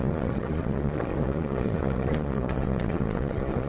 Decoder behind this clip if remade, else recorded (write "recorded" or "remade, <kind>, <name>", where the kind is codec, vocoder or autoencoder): remade, vocoder, Vocos